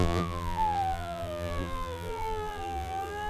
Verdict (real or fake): fake